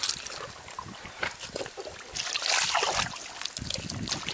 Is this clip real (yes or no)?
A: yes